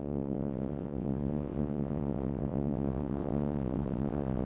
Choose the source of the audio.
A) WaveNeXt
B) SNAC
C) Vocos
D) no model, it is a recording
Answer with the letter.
A